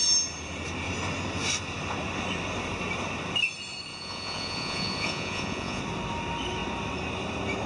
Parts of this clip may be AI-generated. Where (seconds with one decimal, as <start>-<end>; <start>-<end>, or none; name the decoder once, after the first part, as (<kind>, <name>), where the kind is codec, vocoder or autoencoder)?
3.9-5.8 (vocoder, Vocos)